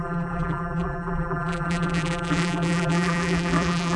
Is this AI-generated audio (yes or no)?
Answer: yes